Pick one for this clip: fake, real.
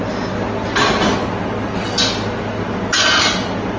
real